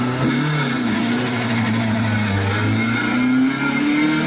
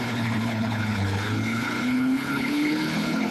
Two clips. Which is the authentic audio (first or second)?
first